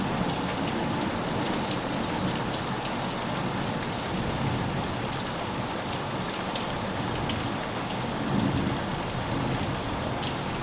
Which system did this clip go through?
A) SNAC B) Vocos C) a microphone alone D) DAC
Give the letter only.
C